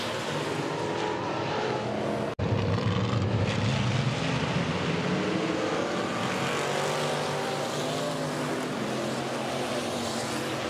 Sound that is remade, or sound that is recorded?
recorded